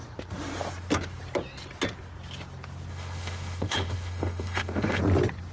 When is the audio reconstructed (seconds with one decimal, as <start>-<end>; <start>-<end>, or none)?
2.9-5.0